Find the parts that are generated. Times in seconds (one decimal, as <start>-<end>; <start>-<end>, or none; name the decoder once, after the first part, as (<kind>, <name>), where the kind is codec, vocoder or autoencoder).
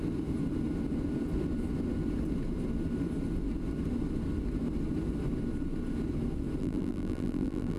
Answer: 6.6-7.8 (vocoder, BigVGAN v2)